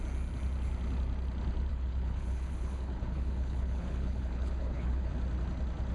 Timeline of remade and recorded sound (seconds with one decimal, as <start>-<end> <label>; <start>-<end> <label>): 0.0-1.7 recorded; 1.7-5.1 remade; 5.1-5.9 recorded